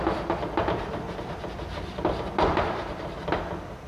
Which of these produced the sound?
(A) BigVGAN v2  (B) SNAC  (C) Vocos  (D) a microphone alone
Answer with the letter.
D